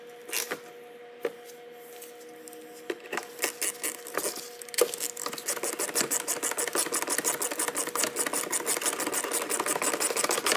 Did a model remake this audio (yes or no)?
no